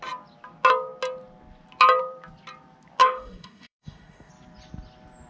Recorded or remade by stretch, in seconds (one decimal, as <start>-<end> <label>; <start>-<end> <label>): 0.0-3.0 recorded; 3.0-4.3 remade; 4.3-5.3 recorded